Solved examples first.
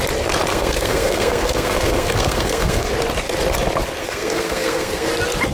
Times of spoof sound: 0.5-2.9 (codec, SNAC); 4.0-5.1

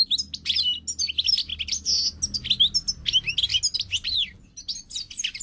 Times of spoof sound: none

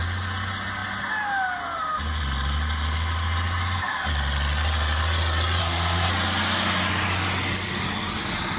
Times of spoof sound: 5.6-6.1 (codec, SNAC)

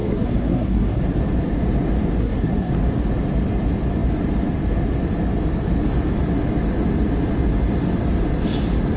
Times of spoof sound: 0.0-1.0 (codec, SNAC); 2.2-2.7

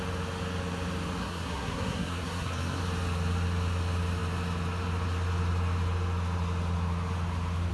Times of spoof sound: 1.2-2.8 (codec, SNAC)

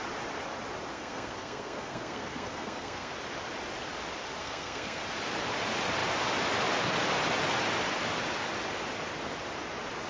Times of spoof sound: 0.9-3.1 (codec, SNAC); 4.4-5.0

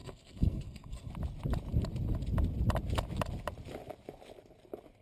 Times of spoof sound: 0.0-1.1 (codec, SNAC)

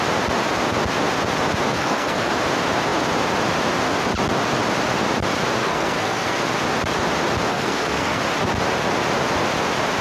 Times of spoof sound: 1.7-2.3 (codec, SNAC); 5.6-6.4; 7.5-8.2